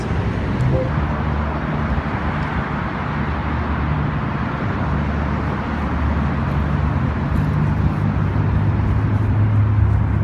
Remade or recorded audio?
recorded